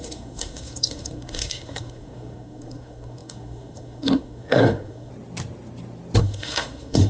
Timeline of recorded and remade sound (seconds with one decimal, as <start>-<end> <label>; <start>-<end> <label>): 0.0-5.1 remade; 5.1-6.2 recorded; 6.2-7.1 remade